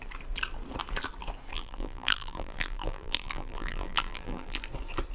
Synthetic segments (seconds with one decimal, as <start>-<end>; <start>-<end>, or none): 1.5-4.6